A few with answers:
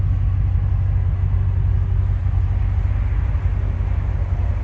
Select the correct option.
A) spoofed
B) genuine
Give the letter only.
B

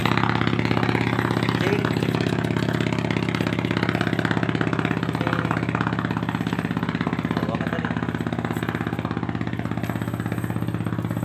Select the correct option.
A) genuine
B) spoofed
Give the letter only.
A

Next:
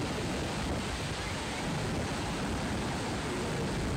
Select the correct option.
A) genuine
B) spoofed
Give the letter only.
A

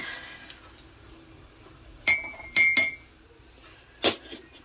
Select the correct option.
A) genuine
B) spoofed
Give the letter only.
A